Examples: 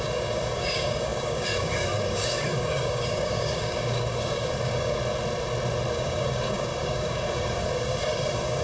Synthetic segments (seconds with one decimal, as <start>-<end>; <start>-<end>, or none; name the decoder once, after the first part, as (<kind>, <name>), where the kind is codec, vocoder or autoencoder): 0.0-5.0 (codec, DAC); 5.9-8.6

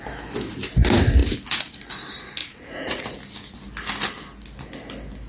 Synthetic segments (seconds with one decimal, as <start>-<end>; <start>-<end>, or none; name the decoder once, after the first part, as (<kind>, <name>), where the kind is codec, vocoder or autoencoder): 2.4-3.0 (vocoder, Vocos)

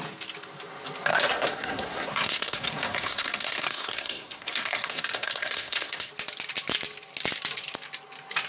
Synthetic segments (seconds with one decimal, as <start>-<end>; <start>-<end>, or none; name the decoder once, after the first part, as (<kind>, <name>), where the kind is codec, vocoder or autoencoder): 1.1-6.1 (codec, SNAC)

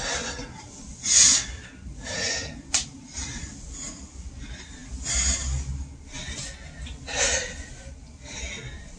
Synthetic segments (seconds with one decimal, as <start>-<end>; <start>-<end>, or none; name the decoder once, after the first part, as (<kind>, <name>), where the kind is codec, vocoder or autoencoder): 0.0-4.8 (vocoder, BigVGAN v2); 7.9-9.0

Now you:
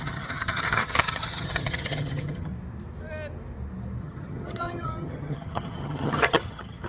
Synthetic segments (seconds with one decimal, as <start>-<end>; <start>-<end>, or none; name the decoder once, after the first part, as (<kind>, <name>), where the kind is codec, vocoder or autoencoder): 0.0-2.5 (vocoder, HiFi-GAN); 4.0-6.9

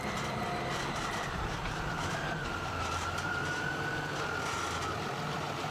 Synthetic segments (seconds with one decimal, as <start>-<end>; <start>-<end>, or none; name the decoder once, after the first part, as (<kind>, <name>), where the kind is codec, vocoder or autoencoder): 0.7-3.8 (vocoder, BigVGAN v2)